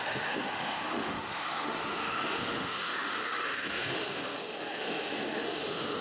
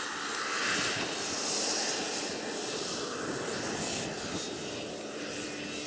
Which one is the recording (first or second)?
second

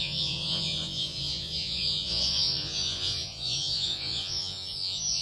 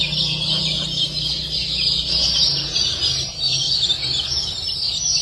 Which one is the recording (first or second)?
second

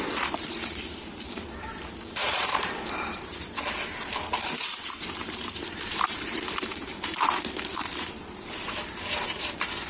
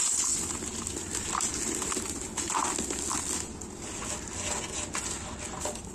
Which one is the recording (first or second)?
second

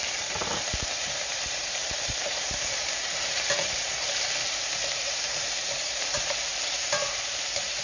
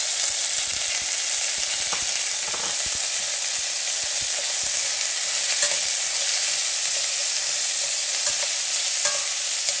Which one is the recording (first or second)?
second